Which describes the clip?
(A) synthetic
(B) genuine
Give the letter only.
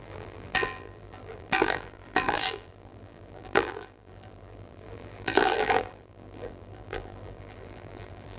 A